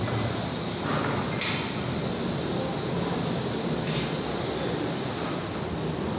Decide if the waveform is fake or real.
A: real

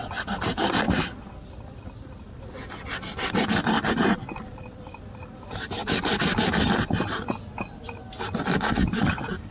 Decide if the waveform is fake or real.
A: real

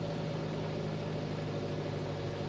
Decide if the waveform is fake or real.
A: real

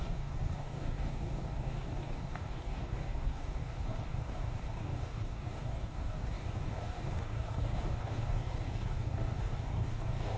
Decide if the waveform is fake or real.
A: fake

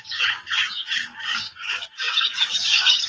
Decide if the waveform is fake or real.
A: fake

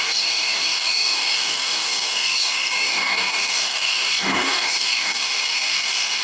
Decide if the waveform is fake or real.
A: fake